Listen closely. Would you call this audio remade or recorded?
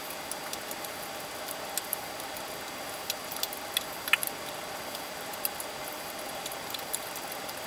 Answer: recorded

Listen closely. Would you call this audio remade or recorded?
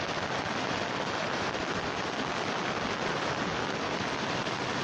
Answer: recorded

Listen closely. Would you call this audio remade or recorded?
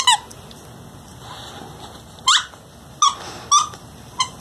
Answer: recorded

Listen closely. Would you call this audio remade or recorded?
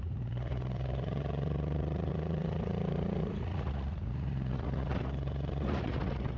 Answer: remade